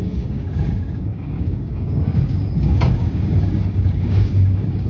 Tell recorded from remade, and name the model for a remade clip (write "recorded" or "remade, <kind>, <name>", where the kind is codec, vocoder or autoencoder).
remade, codec, DAC